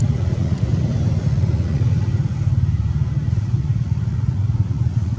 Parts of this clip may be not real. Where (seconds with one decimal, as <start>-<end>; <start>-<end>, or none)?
0.0-0.7; 1.2-2.1; 3.3-5.2